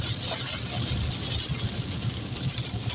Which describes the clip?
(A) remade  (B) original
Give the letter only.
B